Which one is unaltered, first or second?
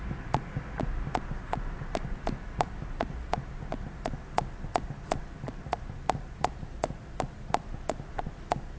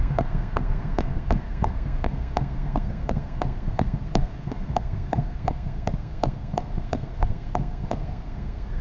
first